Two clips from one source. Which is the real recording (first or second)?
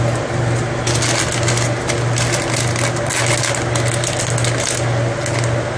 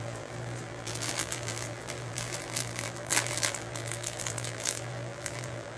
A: first